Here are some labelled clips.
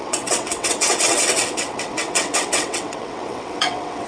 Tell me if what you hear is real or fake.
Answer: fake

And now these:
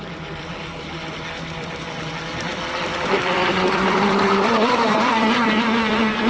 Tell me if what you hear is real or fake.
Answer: fake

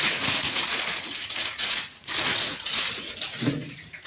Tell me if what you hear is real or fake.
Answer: fake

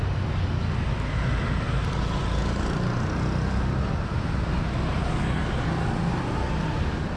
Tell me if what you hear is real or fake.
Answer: real